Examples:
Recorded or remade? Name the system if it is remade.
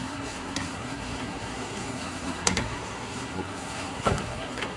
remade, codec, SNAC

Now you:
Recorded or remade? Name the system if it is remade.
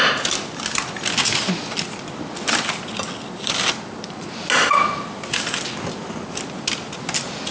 recorded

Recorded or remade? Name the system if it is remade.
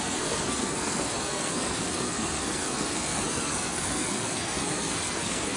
remade, codec, SNAC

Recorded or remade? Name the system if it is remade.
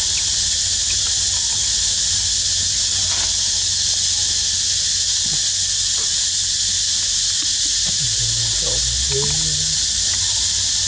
recorded